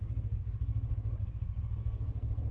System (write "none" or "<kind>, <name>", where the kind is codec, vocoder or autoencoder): codec, SNAC